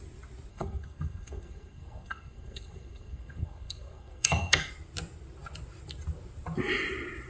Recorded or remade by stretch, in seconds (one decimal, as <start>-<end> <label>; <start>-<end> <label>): 0.0-0.5 recorded; 0.5-4.7 remade; 4.7-7.3 recorded